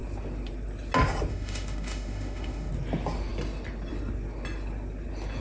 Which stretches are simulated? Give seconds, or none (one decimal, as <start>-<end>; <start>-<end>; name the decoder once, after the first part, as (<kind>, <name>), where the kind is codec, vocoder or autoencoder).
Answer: 1.3-2.7 (autoencoder, DAC-VAE)